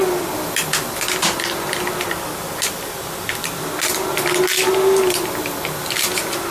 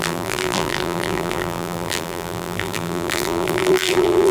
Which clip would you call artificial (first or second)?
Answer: second